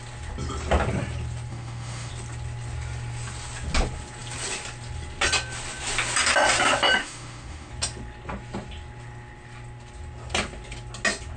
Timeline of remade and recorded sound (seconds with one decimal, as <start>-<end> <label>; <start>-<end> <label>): 0.0-1.5 recorded; 1.5-2.1 remade; 2.1-7.0 recorded; 7.0-7.7 remade; 7.7-11.4 recorded